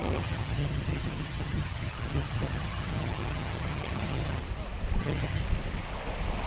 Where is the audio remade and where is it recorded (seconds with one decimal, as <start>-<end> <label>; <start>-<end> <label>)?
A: 0.0-4.4 remade; 4.4-5.0 recorded; 5.0-5.4 remade; 5.4-6.5 recorded